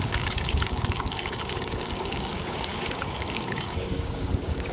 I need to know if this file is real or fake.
fake